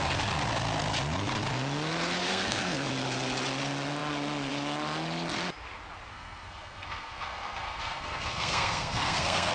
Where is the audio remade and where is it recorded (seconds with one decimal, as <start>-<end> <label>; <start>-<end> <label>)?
0.0-2.2 recorded; 2.2-2.9 remade; 2.9-6.1 recorded; 6.1-9.5 remade